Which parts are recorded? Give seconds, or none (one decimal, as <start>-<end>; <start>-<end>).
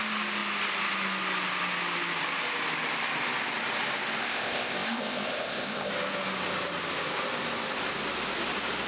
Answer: 0.0-4.2; 5.9-8.9